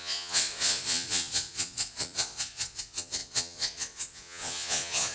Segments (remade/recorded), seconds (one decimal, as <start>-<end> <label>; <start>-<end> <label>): 0.0-5.1 remade